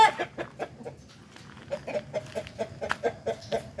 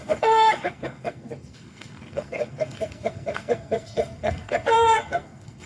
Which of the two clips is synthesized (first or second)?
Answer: second